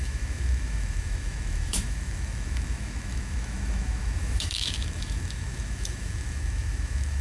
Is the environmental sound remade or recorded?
remade